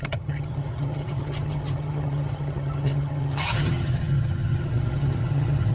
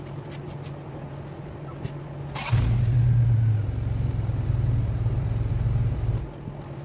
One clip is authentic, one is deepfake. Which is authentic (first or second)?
second